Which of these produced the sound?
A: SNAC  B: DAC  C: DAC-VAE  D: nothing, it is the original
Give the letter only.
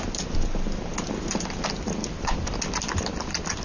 D